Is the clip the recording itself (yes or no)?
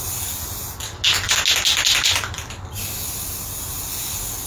yes